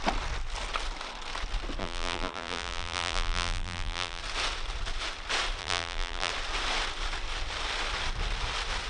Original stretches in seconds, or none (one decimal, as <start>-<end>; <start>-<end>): 0.0-1.8; 4.2-5.6; 6.3-8.9